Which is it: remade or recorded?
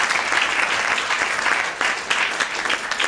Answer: recorded